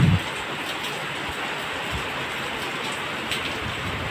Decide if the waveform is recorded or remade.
recorded